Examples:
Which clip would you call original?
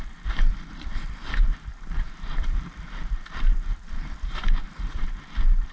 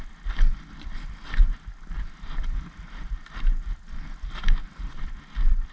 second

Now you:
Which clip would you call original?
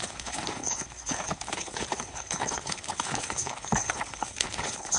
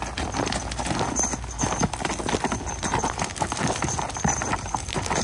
second